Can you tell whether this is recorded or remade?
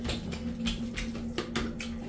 recorded